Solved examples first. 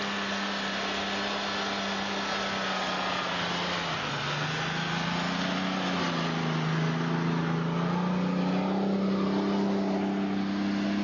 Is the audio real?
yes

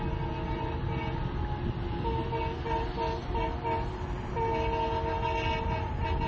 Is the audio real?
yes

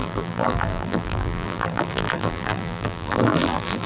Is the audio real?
no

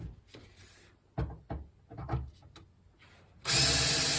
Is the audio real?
yes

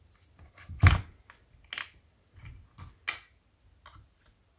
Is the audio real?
yes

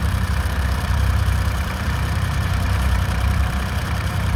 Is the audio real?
no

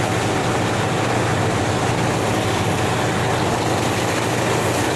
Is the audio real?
yes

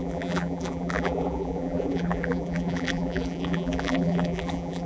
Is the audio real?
no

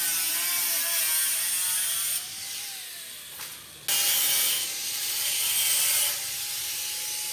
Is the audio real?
yes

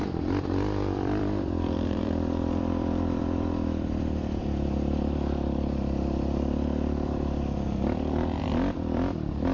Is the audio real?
no